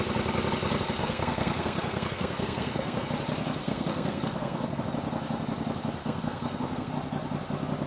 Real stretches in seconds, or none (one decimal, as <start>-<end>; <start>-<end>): 0.0-1.0; 3.1-3.6; 4.8-6.0; 6.9-7.9